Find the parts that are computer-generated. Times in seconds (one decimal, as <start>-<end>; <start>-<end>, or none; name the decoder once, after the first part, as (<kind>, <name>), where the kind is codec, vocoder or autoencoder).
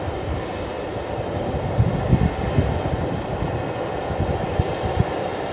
none